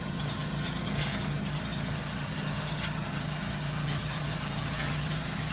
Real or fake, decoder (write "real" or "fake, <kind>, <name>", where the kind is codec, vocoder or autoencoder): fake, vocoder, HiFi-GAN